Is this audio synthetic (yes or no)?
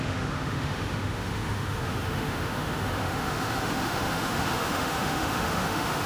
yes